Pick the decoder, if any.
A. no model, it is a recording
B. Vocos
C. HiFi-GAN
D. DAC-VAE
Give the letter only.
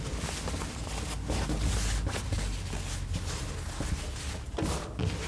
A